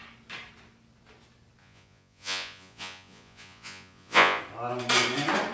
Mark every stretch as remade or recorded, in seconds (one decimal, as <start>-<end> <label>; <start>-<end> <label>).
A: 0.0-1.6 recorded; 1.6-4.4 remade; 4.4-5.5 recorded